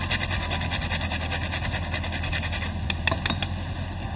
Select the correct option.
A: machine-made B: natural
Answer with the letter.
B